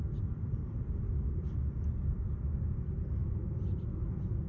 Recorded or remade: recorded